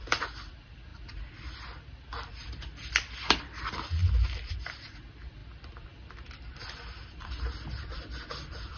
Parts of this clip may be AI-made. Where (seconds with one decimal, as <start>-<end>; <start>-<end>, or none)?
none